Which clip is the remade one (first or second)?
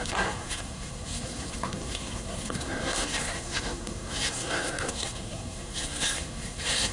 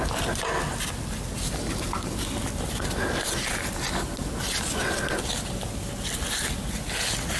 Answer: first